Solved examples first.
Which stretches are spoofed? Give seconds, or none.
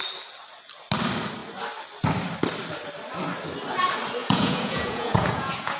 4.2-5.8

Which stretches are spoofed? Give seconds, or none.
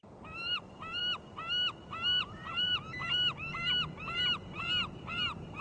0.0-1.0; 2.2-3.6; 5.0-5.6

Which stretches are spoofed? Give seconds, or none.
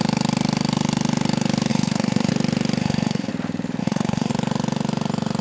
1.7-2.3; 2.8-3.3; 3.8-4.3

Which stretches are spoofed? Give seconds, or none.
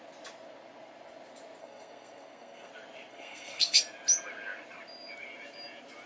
1.6-2.7; 3.1-3.8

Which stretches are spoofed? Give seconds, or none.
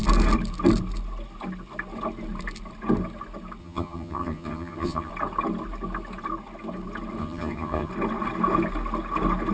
3.6-5.1; 7.2-7.9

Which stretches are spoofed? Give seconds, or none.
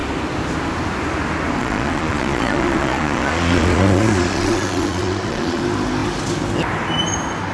1.6-5.6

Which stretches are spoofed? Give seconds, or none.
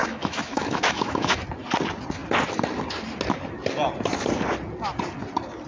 0.0-1.4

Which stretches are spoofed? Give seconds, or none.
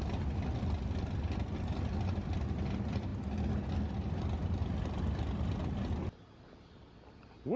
none